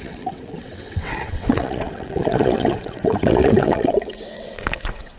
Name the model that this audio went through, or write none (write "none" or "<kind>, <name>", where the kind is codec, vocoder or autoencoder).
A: vocoder, WaveNeXt